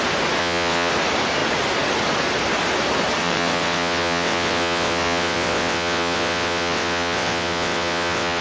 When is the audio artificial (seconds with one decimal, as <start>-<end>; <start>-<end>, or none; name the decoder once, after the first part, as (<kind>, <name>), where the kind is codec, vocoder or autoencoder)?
0.4-0.9 (vocoder, WaveNeXt); 3.2-8.4